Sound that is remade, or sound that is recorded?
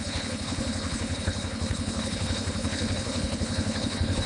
remade